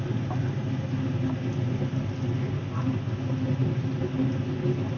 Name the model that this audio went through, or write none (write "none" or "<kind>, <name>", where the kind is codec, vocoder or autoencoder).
none